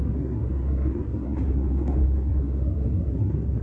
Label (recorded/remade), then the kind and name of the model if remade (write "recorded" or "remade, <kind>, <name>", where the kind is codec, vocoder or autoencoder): remade, codec, SNAC